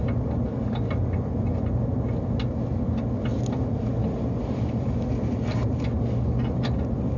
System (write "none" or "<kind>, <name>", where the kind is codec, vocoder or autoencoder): none